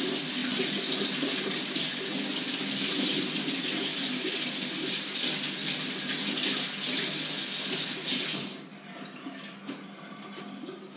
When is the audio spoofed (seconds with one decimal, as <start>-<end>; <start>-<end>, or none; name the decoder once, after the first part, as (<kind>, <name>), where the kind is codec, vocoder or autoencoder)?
none